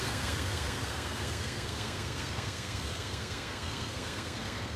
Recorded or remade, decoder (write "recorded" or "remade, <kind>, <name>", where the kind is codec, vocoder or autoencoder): remade, codec, SNAC